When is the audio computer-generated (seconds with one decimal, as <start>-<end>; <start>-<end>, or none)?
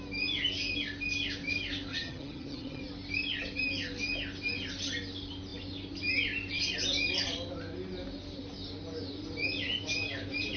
1.9-2.8